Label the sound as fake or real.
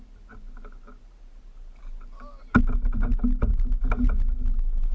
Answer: real